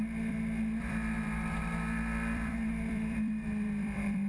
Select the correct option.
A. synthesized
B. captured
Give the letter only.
A